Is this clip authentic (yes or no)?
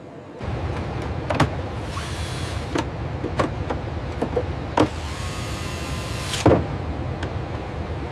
yes